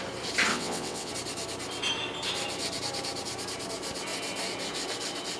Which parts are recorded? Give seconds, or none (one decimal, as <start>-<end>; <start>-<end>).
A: 0.0-0.5; 1.1-5.4